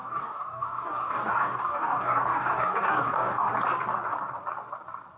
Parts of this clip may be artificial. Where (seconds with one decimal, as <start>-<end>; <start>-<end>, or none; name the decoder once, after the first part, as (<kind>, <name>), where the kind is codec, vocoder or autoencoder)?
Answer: 0.0-3.5 (codec, DAC)

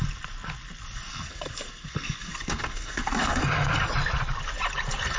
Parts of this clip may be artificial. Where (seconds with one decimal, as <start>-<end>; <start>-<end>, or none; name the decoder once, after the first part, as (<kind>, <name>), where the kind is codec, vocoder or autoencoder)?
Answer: 1.1-3.4 (codec, SNAC)

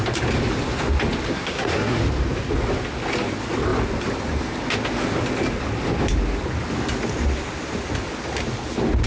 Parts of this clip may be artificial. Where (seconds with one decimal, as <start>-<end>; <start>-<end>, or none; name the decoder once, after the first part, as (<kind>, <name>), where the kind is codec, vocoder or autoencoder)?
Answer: 1.3-2.0 (codec, SNAC)